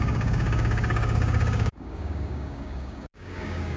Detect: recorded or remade remade